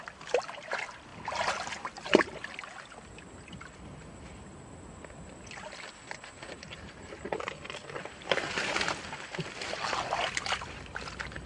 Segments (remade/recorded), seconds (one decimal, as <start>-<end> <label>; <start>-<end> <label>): 0.0-1.1 remade; 1.1-6.3 recorded; 6.3-11.5 remade